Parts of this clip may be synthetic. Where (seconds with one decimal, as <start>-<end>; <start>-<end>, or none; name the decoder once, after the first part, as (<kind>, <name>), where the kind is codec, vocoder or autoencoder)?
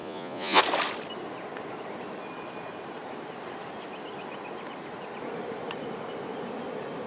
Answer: 0.0-0.6 (vocoder, Vocos)